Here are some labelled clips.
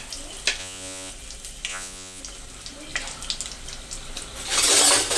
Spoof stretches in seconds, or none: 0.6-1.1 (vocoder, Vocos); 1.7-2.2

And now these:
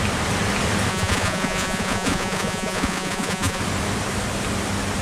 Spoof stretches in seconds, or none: 0.9-3.6 (vocoder, Vocos)

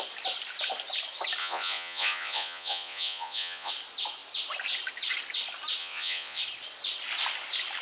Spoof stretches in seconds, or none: 1.4-3.7 (vocoder, Vocos); 5.8-6.4

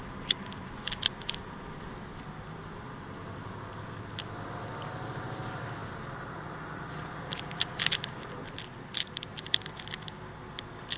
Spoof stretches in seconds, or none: none

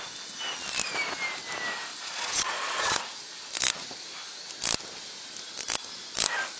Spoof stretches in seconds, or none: 1.9-3.0 (vocoder, Vocos)

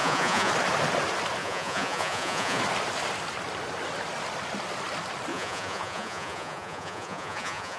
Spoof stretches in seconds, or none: 0.0-0.5 (vocoder, Vocos); 1.4-2.6; 5.3-7.8